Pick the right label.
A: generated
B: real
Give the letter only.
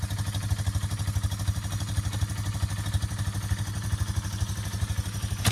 B